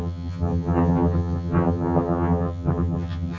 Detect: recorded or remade remade